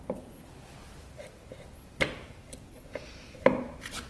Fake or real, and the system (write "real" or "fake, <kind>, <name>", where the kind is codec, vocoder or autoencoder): real